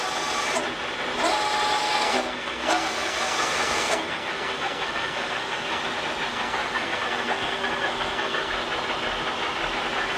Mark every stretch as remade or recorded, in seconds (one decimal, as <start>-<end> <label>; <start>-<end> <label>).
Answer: 0.0-1.8 recorded; 1.8-5.8 remade; 5.8-6.3 recorded; 6.3-8.5 remade; 8.5-10.2 recorded